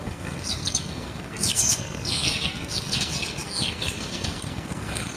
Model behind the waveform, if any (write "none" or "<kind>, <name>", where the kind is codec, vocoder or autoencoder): codec, SNAC